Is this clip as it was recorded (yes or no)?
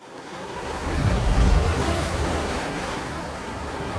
no